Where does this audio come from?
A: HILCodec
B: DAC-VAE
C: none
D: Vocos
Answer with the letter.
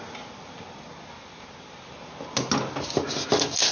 C